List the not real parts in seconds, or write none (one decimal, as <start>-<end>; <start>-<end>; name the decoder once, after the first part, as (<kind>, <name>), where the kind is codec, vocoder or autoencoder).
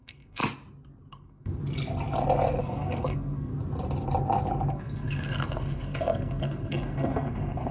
0.0-0.4 (codec, SNAC); 1.1-1.6; 2.6-3.5; 4.7-7.7